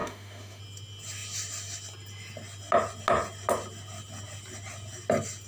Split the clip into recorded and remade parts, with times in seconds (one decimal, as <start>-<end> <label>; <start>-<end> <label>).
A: 0.0-0.6 remade; 0.6-5.5 recorded